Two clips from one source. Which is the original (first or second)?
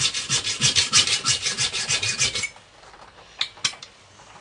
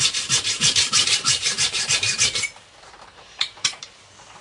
first